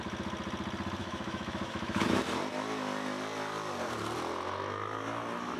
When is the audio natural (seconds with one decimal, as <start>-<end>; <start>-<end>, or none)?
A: 0.0-1.0; 2.2-5.6